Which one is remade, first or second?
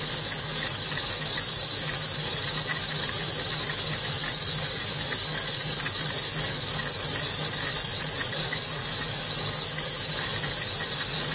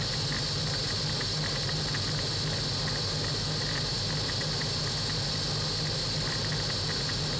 first